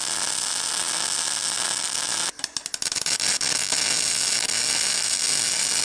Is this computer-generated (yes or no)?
no